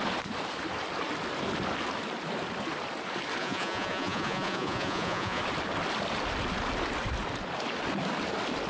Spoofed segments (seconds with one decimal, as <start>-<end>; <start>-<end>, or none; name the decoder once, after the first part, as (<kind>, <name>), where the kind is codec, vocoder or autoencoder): 3.4-5.4 (vocoder, Vocos)